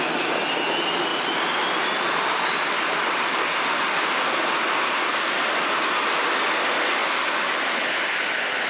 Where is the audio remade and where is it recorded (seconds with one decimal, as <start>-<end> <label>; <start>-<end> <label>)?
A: 0.0-8.7 recorded